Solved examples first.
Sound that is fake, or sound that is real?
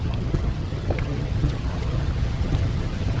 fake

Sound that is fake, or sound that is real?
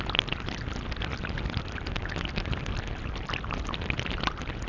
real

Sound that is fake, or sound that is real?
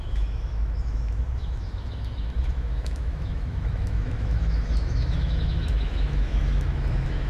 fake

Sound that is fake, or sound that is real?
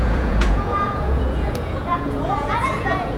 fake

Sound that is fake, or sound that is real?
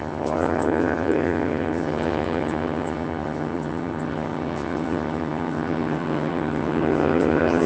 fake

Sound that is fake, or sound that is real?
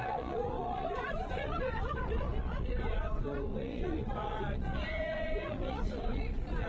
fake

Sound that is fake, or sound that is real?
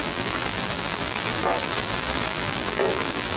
fake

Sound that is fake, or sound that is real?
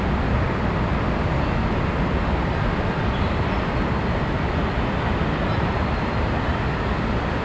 real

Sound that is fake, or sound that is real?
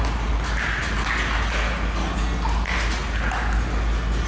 real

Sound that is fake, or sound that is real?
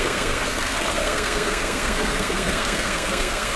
fake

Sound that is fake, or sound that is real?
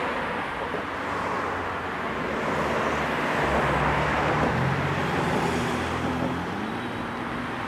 real